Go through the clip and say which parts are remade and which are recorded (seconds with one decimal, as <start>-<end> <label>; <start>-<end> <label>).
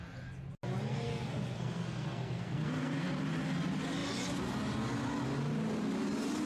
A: 0.0-0.9 recorded; 0.9-3.1 remade; 3.1-6.5 recorded